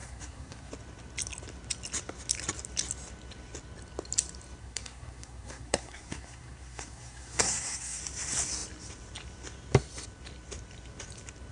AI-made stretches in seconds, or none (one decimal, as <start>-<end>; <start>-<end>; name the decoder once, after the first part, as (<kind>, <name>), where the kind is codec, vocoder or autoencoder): 0.0-0.7 (codec, SNAC); 4.6-8.0